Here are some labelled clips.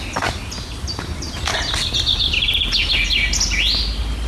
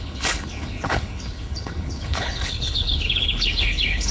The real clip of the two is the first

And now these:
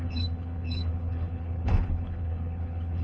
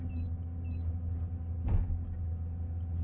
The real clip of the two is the second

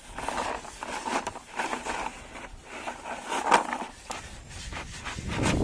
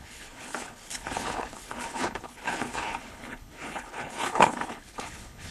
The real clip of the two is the first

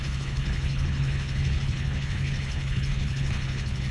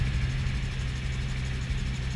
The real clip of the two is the second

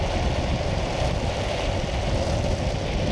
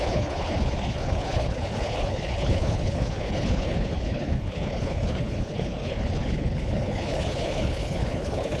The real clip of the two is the first